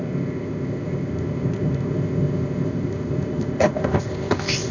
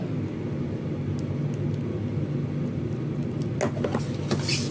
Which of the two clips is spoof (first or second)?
first